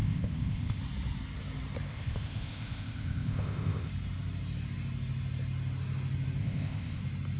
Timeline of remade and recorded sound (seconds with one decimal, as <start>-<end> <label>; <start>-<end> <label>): 0.0-0.8 remade; 0.8-1.9 recorded; 1.9-3.9 remade; 3.9-6.4 recorded; 6.4-7.0 remade; 7.0-7.4 recorded